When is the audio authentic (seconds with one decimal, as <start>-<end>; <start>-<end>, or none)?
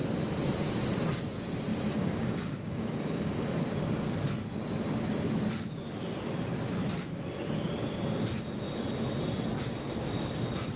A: 0.0-1.7; 3.6-10.8